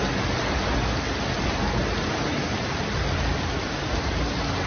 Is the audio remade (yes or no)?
no